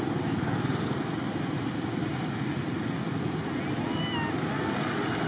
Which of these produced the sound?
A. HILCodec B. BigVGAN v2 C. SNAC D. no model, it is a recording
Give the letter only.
D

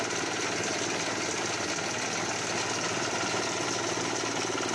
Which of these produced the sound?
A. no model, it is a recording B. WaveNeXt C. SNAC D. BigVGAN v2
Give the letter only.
A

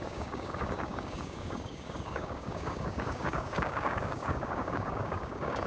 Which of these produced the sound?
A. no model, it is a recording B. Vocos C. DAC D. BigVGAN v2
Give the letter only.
C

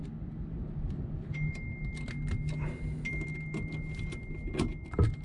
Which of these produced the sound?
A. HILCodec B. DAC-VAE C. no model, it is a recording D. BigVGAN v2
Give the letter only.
C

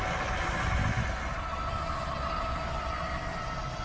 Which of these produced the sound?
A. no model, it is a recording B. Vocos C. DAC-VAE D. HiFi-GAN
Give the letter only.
A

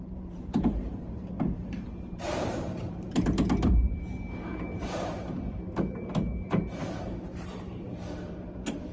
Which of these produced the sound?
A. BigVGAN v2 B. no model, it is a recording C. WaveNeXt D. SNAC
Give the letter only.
A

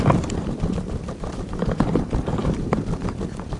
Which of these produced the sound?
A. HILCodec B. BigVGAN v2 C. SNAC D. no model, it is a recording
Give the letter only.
B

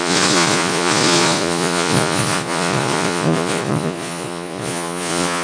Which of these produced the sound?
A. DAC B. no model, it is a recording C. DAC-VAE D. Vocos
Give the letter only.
D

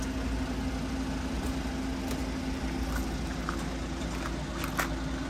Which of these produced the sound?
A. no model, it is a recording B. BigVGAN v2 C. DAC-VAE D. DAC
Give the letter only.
A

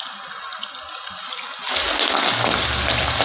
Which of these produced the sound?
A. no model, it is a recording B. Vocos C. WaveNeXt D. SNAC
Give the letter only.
A